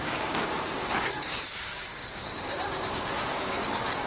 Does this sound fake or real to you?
fake